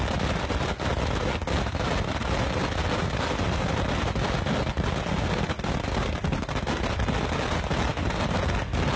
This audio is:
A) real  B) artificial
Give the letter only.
A